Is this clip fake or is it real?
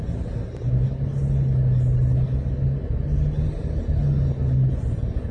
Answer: real